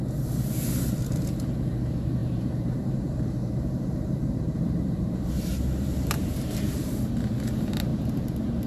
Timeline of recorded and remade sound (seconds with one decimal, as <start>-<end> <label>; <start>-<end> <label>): 0.0-2.2 recorded; 2.2-7.1 remade; 7.1-7.9 recorded; 7.9-8.7 remade